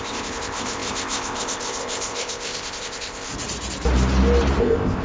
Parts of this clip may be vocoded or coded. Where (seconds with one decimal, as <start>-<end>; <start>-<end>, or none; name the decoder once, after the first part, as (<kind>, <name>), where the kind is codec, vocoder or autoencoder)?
0.0-3.3 (codec, ZipCodec); 4.6-5.0

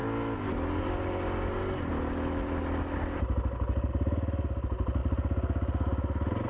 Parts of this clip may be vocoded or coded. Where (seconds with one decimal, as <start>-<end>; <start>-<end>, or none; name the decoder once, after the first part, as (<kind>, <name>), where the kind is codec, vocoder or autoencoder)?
none

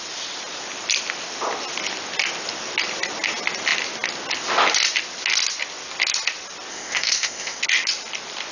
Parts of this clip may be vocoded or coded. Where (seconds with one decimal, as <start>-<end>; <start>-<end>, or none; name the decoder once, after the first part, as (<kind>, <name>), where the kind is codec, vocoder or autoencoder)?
6.7-7.6 (codec, ZipCodec)

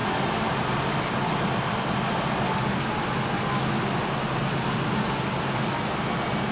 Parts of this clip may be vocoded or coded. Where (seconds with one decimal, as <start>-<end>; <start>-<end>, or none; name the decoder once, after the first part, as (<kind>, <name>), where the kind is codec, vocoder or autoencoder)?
none